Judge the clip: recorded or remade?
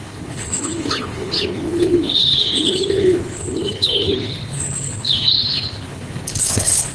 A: remade